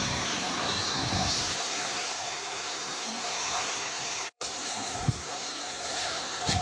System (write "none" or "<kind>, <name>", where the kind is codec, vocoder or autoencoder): codec, SNAC